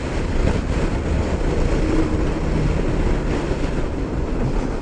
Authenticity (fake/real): real